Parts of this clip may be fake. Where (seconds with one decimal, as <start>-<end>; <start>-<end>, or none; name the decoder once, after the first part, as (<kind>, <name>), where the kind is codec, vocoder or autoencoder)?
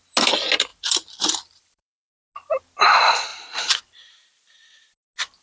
0.7-2.1 (vocoder, BigVGAN v2); 3.3-3.8